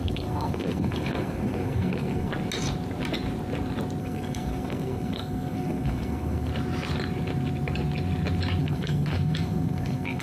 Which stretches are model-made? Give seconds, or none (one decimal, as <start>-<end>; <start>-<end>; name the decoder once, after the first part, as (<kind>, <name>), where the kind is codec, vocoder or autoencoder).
0.0-2.3 (codec, SNAC); 4.0-6.5; 8.6-10.2